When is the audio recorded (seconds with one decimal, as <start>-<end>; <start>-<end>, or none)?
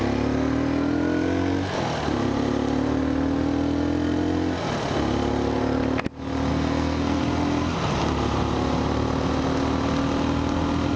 0.0-6.5; 7.2-11.0